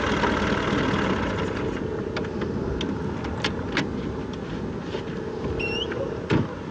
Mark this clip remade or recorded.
recorded